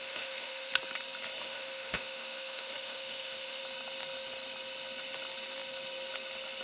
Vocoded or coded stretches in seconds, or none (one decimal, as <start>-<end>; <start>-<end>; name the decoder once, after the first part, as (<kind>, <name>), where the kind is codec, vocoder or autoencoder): 0.0-0.7 (autoencoder, DAC-VAE); 1.4-3.6